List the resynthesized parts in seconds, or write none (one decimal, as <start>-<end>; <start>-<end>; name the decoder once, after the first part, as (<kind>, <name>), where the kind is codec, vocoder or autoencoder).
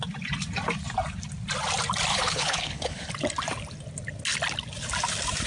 2.1-3.1 (codec, HILCodec)